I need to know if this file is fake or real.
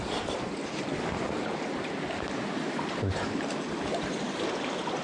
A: real